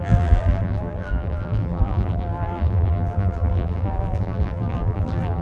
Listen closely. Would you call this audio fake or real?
fake